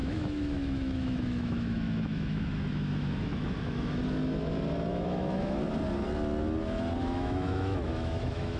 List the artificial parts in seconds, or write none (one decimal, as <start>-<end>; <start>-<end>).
0.0-4.0; 4.9-5.6; 7.0-8.6